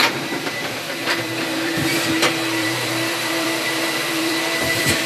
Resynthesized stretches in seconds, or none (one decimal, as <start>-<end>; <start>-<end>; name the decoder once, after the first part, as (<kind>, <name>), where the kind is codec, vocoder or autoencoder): 0.0-5.1 (vocoder, BigVGAN v2)